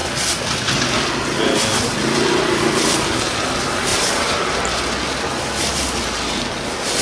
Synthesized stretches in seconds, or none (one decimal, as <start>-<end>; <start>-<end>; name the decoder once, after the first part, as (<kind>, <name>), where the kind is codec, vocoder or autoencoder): none